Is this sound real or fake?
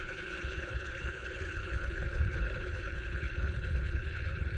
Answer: fake